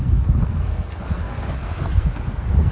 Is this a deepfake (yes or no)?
yes